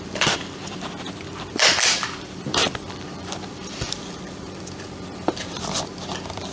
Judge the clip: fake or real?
fake